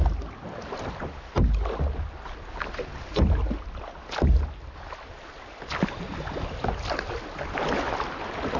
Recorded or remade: recorded